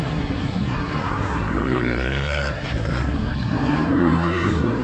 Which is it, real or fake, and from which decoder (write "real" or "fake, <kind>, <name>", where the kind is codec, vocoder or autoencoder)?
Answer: fake, codec, SNAC